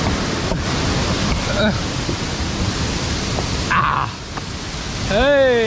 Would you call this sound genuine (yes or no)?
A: yes